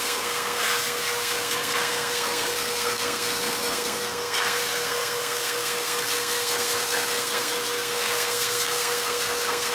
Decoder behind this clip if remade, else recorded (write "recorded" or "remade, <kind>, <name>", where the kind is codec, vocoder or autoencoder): remade, codec, SNAC